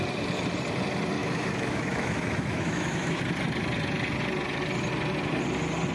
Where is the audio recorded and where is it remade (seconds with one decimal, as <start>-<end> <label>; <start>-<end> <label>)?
0.0-1.2 recorded; 1.2-3.2 remade; 3.2-5.9 recorded